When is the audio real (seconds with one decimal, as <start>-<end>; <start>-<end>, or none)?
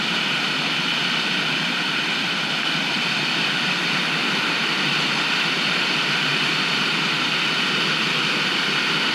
0.0-1.0; 4.6-6.3; 6.9-9.1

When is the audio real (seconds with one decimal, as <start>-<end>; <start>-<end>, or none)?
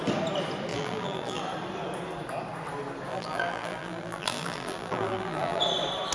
0.0-0.7; 1.4-3.1; 5.6-6.1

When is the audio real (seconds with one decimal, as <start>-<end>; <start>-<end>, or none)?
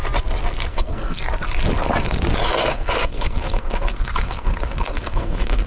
0.0-0.7; 1.2-2.6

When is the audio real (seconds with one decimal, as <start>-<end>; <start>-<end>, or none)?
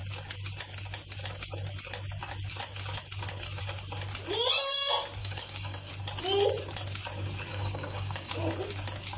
0.0-5.2; 5.9-7.5; 8.3-9.2